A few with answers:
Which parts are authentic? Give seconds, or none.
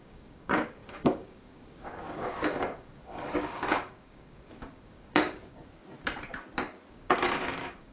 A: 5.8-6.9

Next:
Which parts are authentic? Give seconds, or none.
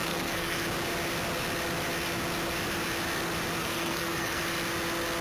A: 0.6-3.6; 4.4-5.2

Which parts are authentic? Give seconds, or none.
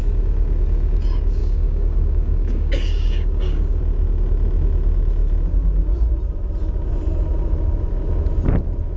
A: 0.0-1.4; 3.8-9.0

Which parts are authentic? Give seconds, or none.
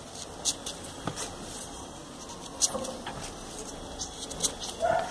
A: 0.0-5.1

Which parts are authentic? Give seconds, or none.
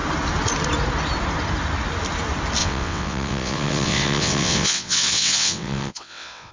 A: 0.0-2.6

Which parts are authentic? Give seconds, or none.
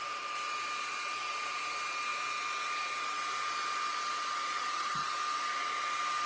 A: 0.0-4.5; 5.2-6.3